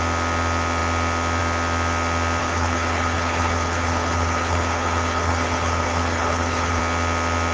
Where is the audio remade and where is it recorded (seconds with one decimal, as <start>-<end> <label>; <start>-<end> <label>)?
0.0-2.4 recorded; 2.4-6.8 remade; 6.8-7.5 recorded